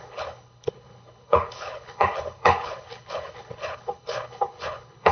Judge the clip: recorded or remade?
remade